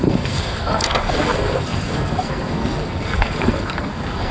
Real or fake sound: fake